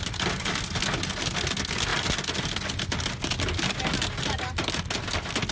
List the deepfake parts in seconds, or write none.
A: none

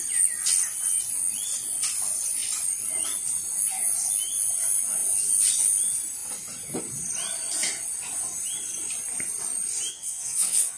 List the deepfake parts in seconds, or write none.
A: 9.9-10.8 (vocoder, WaveNeXt)